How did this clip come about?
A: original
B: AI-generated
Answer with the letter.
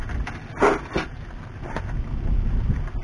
A